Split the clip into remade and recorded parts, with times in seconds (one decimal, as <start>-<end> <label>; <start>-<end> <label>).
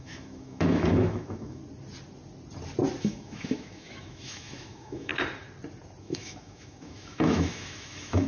0.0-1.6 remade; 1.6-3.0 recorded; 3.0-5.1 remade; 5.1-6.0 recorded; 6.0-8.3 remade